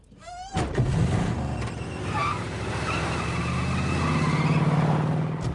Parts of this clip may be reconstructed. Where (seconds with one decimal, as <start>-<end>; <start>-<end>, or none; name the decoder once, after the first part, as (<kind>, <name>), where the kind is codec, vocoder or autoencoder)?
2.2-3.4 (vocoder, BigVGAN v2)